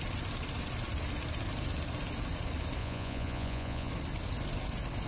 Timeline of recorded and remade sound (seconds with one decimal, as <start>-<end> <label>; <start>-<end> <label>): 0.0-2.8 recorded; 2.8-3.9 remade; 3.9-5.1 recorded